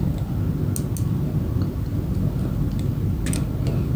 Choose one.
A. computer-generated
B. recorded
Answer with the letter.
B